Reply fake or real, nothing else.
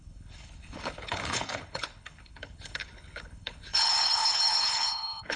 fake